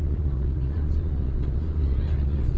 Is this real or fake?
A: fake